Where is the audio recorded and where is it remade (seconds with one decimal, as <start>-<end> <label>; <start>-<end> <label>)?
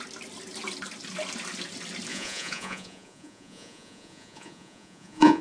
0.0-2.1 recorded; 2.1-5.4 remade